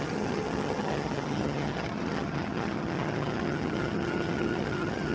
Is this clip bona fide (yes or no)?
no